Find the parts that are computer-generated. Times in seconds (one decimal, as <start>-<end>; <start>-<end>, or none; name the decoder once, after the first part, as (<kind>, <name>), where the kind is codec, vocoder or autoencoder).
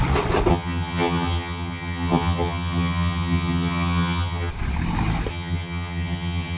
0.5-4.5 (vocoder, HiFi-GAN); 5.3-6.6